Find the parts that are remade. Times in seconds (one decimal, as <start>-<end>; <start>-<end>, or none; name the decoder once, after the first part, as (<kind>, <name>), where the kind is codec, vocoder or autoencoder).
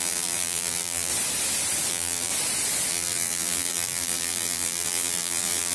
0.0-1.1 (vocoder, BigVGAN v2); 1.9-2.3; 2.9-5.7